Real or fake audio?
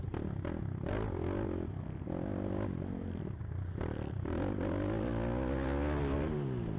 real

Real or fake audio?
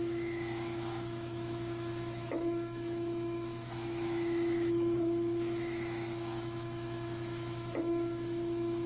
fake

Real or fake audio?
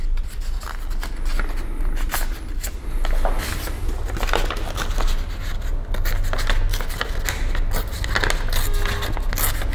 real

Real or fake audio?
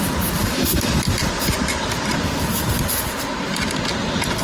real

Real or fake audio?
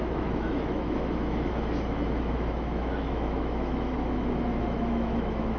fake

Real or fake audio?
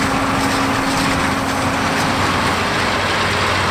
real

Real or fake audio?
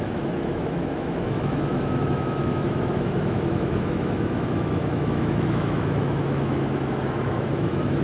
fake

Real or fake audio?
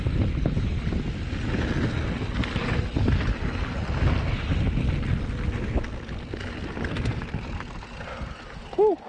real